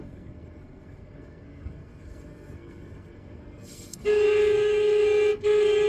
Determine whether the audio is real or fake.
fake